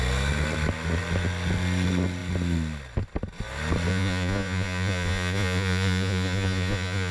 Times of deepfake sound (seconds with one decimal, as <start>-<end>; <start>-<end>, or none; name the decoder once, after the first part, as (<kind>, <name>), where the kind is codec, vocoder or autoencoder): 3.9-7.1 (vocoder, Vocos)